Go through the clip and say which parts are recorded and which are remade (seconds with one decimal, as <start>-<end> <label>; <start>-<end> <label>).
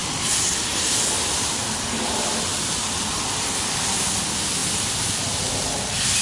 0.0-6.2 recorded